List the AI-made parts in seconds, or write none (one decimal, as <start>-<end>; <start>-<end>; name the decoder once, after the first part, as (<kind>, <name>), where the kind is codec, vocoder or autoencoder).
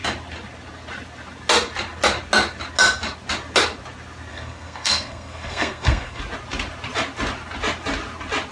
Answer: 4.3-6.2 (codec, SNAC)